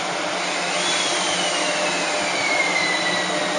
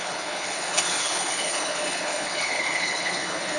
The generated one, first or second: second